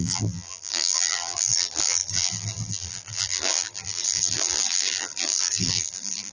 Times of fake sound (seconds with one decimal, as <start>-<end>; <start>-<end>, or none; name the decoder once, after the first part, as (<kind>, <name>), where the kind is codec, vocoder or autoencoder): 0.0-6.3 (vocoder, BigVGAN v2)